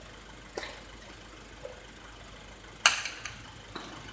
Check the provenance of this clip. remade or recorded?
recorded